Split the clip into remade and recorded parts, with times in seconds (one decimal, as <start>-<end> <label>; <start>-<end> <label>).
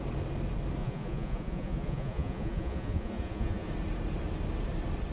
0.0-0.8 recorded; 0.8-3.7 remade; 3.7-5.1 recorded